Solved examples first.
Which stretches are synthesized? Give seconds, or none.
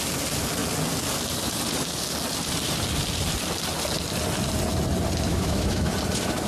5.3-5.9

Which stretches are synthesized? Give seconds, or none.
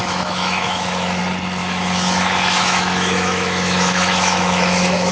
0.0-1.2; 1.6-5.1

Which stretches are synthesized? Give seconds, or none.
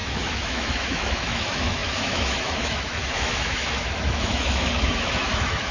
0.0-5.7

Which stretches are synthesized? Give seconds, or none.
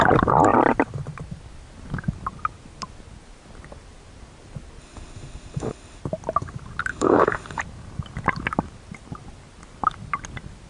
4.8-6.0; 6.9-7.6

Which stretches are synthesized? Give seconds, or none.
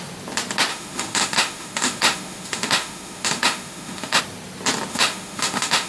0.7-4.2; 4.9-5.9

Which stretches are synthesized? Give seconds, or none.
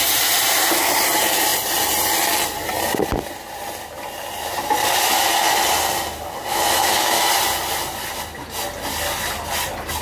6.5-7.2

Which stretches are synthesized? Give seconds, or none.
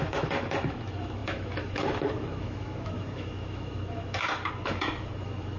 0.0-5.6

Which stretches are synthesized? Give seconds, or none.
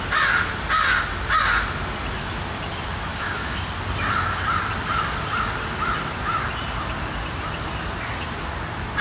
3.1-3.6